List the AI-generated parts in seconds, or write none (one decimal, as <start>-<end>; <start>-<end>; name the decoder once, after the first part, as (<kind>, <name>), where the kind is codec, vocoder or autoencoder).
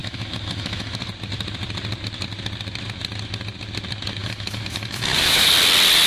0.0-1.1 (autoencoder, DAC-VAE); 4.2-5.5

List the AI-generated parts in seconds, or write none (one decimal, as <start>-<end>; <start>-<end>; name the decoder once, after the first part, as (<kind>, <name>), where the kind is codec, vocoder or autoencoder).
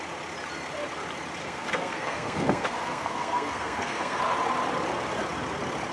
1.4-4.2 (codec, SNAC)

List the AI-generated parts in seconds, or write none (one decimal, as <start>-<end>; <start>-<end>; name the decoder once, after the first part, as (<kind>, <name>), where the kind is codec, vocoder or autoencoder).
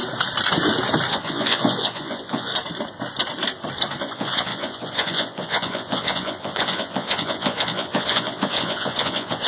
1.1-2.5 (vocoder, Vocos); 4.0-9.5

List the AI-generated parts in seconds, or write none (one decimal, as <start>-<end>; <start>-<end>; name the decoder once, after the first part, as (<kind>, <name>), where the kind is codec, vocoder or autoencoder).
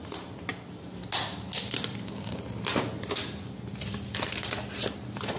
none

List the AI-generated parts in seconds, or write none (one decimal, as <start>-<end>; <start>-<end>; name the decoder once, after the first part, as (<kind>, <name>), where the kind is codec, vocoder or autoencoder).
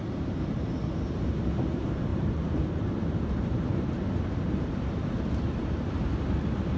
2.1-6.2 (vocoder, BigVGAN v2)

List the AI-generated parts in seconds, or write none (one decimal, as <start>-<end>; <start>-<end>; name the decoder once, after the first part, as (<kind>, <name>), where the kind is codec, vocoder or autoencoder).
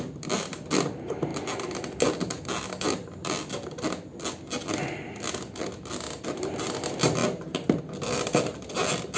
none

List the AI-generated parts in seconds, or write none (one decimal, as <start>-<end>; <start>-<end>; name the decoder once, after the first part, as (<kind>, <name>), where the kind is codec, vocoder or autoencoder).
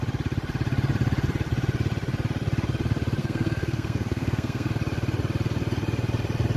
3.2-4.7 (codec, SNAC)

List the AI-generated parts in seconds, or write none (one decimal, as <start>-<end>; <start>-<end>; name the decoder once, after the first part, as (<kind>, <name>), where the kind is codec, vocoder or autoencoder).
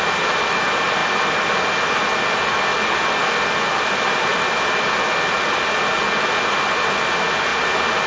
none